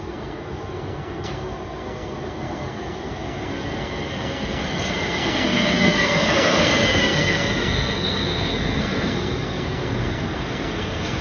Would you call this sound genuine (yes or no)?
no